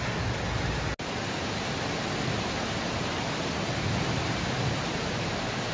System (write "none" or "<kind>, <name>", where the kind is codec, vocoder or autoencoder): none